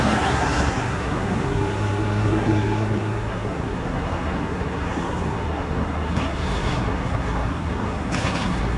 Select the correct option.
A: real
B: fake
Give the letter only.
B